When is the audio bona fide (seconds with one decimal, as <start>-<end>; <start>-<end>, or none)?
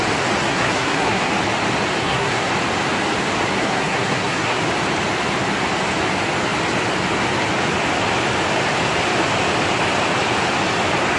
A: 0.0-0.5; 1.3-2.0; 2.5-3.6; 4.6-11.2